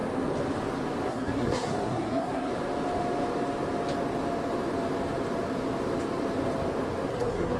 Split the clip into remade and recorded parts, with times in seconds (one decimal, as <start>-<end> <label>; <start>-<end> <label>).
0.0-1.1 recorded; 1.1-2.5 remade; 2.5-7.1 recorded; 7.1-7.6 remade